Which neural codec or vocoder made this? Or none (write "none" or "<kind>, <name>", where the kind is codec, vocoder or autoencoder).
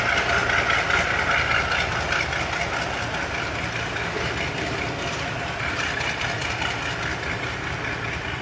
none